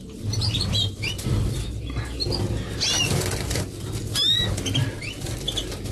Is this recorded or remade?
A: recorded